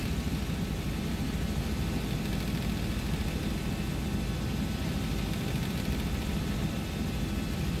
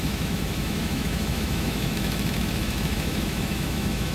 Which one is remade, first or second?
second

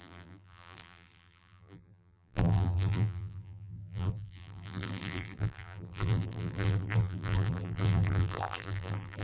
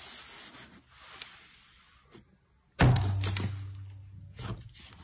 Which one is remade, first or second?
first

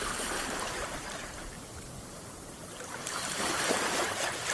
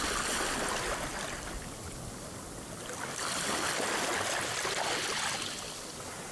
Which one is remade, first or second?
first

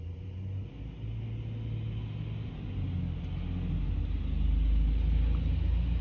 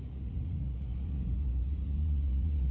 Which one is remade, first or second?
second